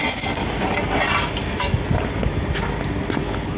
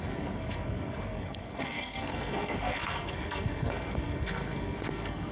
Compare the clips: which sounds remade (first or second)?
second